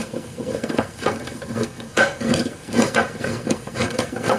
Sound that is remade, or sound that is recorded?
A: remade